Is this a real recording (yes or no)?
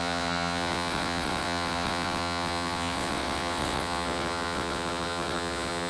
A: no